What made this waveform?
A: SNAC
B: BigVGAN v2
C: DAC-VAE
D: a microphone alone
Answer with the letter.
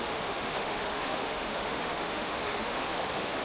C